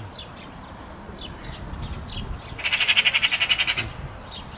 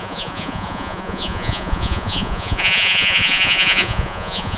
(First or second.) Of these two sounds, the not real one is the second